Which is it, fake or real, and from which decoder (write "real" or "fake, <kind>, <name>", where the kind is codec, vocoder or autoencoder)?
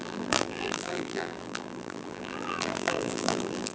fake, vocoder, BigVGAN v2